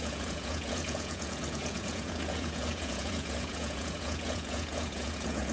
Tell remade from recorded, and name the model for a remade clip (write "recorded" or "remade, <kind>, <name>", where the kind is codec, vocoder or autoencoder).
remade, vocoder, Vocos